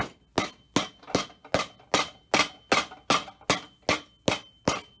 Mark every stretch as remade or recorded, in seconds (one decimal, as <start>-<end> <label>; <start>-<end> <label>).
0.0-5.0 recorded